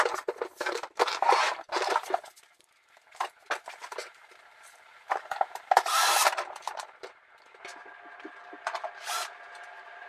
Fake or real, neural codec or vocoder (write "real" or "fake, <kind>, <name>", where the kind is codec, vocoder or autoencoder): fake, vocoder, BigVGAN v2